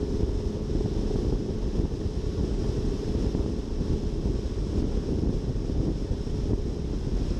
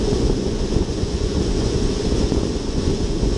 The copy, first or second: second